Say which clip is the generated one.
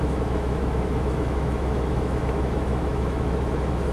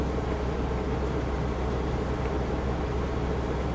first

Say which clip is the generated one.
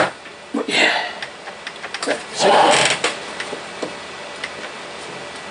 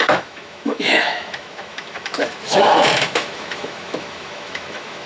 second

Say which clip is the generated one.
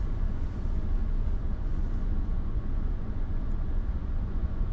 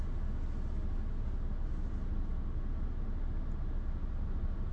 first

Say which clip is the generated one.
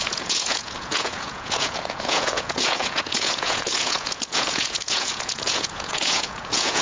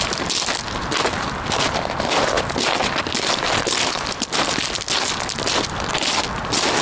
first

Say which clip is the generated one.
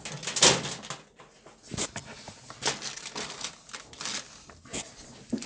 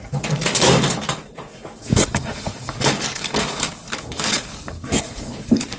second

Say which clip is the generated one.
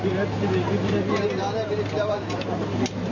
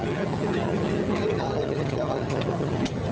second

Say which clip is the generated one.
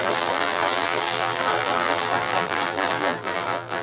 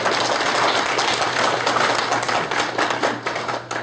first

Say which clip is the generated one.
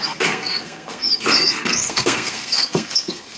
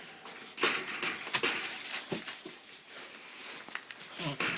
first